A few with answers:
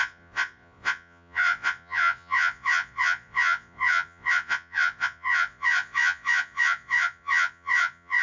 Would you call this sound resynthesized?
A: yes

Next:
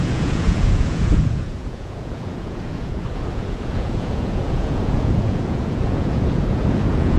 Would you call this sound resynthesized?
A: yes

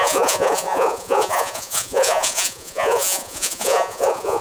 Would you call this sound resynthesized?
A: yes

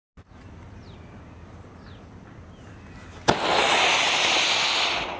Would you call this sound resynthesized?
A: no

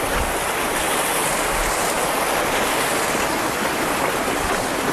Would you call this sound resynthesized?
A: no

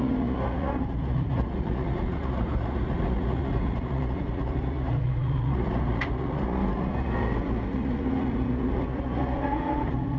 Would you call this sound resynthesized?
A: yes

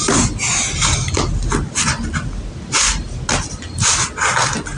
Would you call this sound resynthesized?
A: no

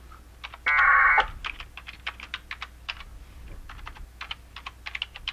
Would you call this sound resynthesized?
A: no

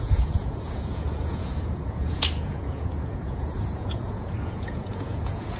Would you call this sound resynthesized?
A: yes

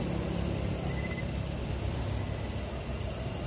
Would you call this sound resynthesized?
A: no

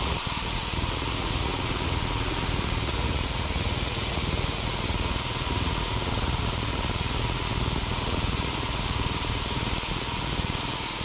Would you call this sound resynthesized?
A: yes